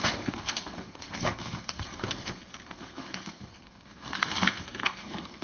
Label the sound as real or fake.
fake